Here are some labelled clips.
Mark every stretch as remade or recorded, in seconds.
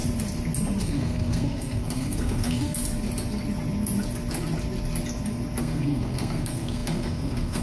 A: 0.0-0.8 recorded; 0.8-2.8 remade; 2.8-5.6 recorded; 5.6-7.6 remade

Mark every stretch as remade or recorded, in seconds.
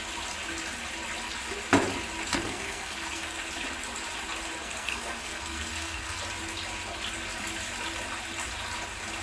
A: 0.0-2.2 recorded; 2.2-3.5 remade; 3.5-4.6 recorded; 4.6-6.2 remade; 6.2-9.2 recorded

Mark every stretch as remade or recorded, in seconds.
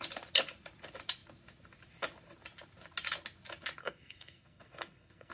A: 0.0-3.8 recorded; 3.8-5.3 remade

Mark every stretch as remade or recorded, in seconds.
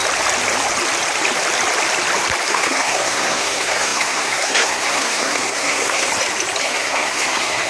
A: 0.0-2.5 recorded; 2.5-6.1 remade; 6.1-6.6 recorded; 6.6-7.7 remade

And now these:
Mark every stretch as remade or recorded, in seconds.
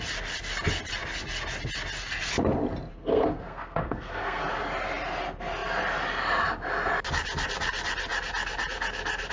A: 0.0-2.9 recorded; 2.9-4.4 remade; 4.4-9.3 recorded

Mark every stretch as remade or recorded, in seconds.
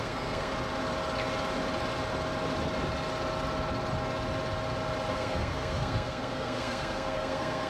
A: 0.0-0.5 remade; 0.5-5.1 recorded; 5.1-7.7 remade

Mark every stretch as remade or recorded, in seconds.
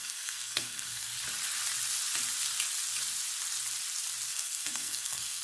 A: 0.0-1.1 remade; 1.1-4.3 recorded; 4.3-5.4 remade